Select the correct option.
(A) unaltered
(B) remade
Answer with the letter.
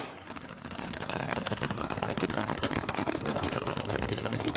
B